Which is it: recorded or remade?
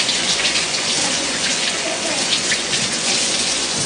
remade